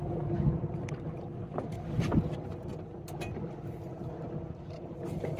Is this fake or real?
real